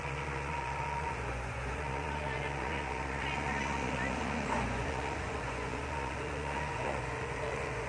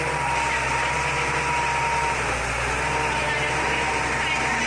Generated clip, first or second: first